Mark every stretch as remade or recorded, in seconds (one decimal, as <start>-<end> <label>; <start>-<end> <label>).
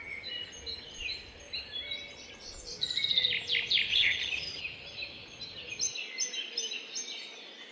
0.0-3.9 recorded; 3.9-4.6 remade; 4.6-7.7 recorded